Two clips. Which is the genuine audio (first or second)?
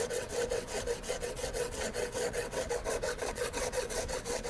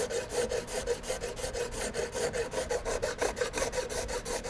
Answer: second